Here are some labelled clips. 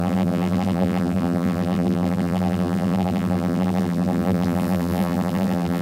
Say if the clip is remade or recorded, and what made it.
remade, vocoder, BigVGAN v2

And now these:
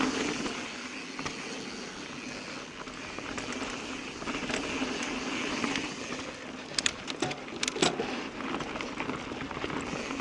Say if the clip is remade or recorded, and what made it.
recorded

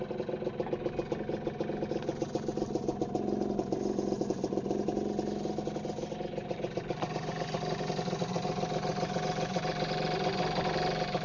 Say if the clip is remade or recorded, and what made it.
recorded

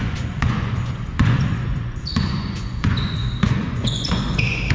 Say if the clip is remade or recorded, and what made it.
remade, vocoder, Vocos